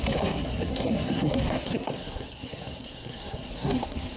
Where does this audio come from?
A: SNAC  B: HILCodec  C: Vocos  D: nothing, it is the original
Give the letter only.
A